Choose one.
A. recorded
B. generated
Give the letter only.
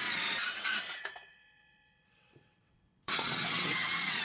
B